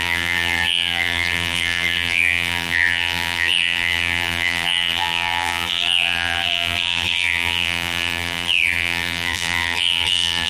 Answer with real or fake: fake